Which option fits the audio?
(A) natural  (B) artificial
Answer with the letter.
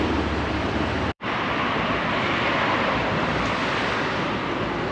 B